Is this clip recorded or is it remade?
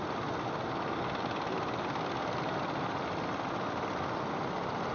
recorded